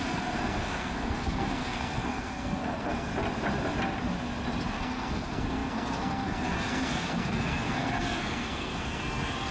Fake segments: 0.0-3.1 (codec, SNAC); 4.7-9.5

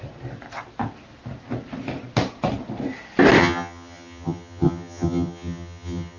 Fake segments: 3.4-6.2 (vocoder, HiFi-GAN)

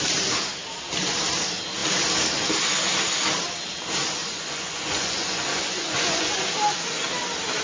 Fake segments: 4.2-6.3 (vocoder, Vocos)

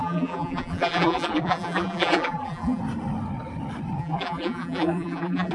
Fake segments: 0.0-2.8 (vocoder, BigVGAN v2); 4.0-5.5

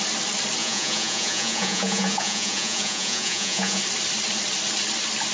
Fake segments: 0.6-3.8 (vocoder, Vocos)